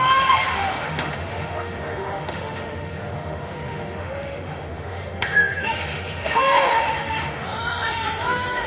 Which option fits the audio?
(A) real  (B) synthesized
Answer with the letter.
B